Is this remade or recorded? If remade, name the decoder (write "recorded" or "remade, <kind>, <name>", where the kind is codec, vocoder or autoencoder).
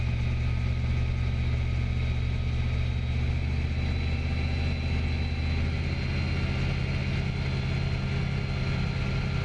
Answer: recorded